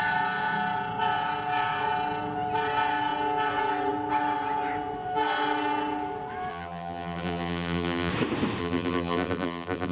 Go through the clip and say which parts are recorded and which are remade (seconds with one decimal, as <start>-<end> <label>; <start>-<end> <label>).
0.0-6.5 recorded; 6.5-8.1 remade; 8.1-8.6 recorded; 8.6-9.9 remade